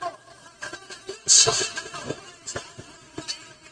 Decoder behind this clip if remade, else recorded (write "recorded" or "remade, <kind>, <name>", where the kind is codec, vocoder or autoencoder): recorded